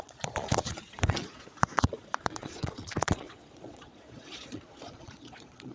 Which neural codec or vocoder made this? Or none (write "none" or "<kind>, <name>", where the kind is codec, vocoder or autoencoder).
vocoder, Vocos